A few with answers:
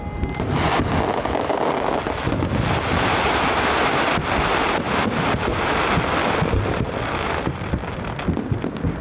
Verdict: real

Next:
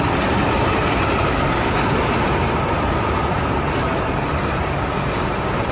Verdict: fake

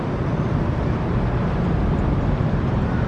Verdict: real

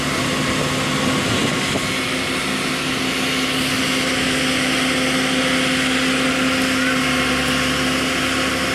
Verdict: real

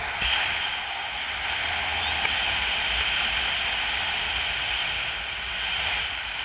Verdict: real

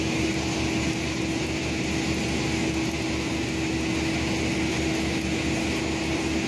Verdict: real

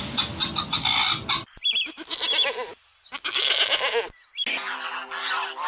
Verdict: real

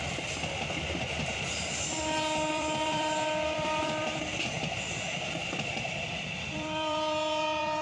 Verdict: fake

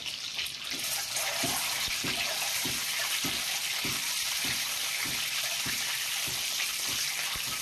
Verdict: real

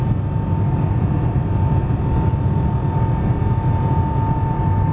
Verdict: real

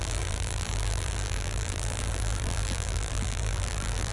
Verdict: fake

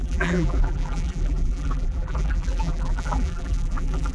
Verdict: fake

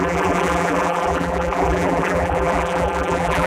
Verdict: fake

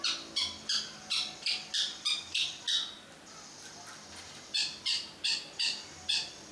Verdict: fake